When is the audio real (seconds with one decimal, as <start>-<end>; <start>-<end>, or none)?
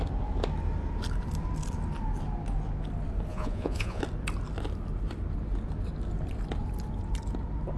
0.0-3.3; 4.0-7.8